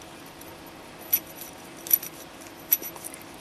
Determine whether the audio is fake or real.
real